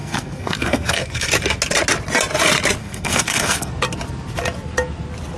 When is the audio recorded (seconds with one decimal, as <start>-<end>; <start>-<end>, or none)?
1.3-2.8; 3.7-5.4